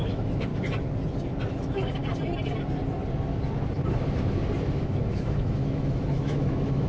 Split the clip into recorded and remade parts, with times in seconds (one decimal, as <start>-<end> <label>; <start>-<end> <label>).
0.0-0.5 remade; 0.5-1.5 recorded; 1.5-2.0 remade; 2.0-4.7 recorded; 4.7-6.9 remade